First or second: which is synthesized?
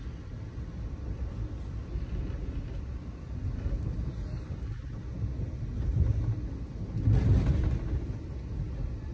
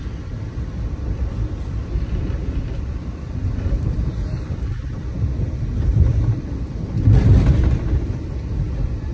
second